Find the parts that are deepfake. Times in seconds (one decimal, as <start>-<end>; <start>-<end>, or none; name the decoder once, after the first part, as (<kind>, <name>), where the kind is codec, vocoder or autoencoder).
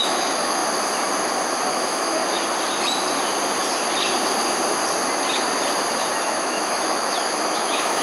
0.0-0.6 (autoencoder, DAC-VAE); 1.7-2.2; 6.2-8.0